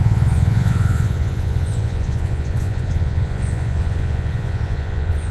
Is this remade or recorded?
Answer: remade